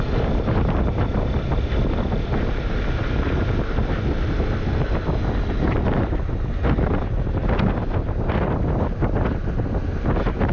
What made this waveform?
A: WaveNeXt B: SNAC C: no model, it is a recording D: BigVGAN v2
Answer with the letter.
C